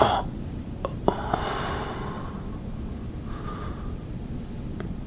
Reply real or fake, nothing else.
fake